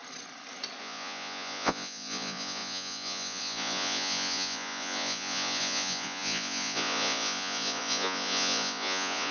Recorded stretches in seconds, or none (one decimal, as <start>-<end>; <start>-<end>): 0.0-0.8